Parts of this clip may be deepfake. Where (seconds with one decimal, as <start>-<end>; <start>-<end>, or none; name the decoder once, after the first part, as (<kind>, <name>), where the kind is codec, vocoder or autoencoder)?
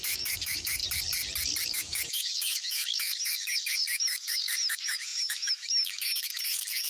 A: 0.0-0.8 (autoencoder, DAC-VAE); 1.7-6.9